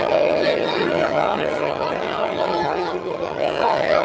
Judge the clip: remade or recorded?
remade